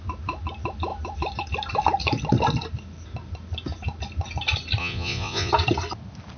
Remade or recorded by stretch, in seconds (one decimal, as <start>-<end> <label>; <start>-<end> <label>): 0.0-4.8 recorded; 4.8-5.5 remade; 5.5-6.4 recorded